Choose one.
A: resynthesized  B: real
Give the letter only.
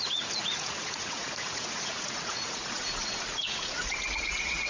A